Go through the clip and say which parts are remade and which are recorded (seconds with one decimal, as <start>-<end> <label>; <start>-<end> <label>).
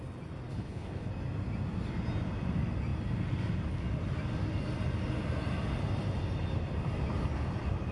0.0-0.5 recorded; 0.5-1.1 remade; 1.1-7.9 recorded